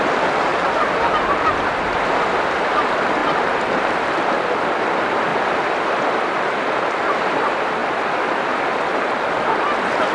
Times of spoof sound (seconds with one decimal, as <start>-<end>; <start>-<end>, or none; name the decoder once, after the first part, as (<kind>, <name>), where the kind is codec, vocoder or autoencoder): 0.0-3.2 (vocoder, BigVGAN v2); 4.8-7.8; 8.4-10.1